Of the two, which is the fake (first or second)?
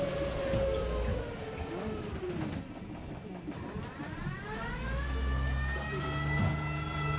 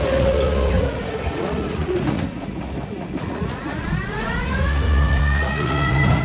second